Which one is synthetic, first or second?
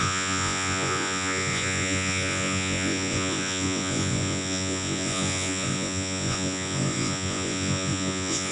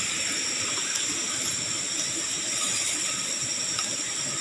first